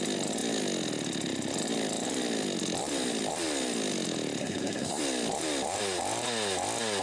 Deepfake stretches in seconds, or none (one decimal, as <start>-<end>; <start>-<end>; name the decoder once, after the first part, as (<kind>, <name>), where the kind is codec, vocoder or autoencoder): 4.4-5.0 (codec, SNAC)